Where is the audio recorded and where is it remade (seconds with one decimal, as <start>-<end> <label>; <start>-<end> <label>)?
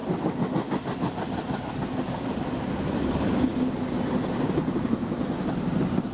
0.0-6.1 recorded